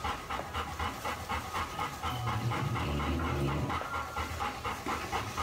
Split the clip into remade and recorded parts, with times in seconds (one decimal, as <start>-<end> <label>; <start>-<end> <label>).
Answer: 0.0-5.4 recorded